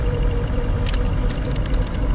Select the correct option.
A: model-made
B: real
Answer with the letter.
A